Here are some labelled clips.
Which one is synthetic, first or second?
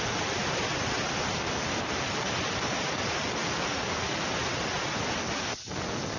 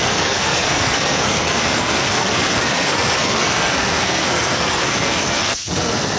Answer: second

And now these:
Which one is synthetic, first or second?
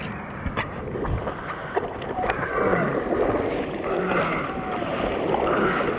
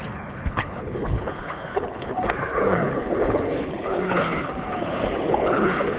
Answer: second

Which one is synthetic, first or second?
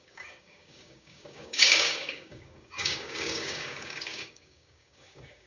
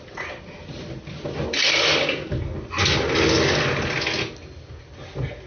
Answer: first